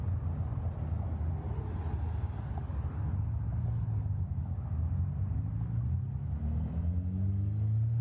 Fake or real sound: real